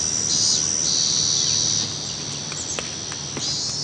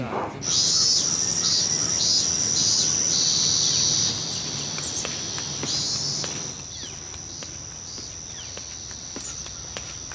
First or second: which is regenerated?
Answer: second